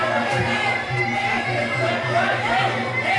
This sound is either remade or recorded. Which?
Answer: recorded